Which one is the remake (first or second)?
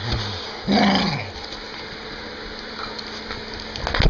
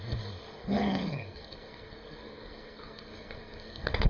second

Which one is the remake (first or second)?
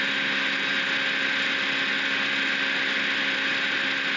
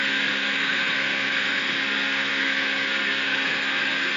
second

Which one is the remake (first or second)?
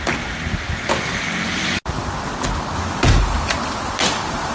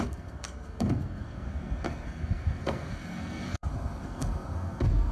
second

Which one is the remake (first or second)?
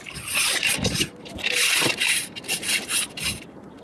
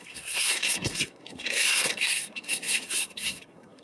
second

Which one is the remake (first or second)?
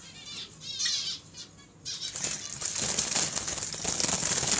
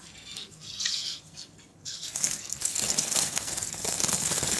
second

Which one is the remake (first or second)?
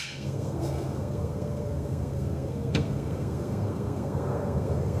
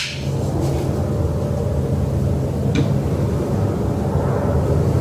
first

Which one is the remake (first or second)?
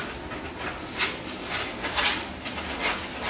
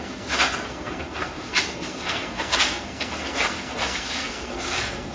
second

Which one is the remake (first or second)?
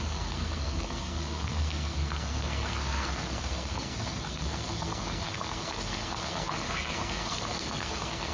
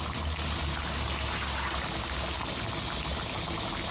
first